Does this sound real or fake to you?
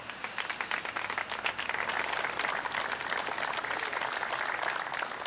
real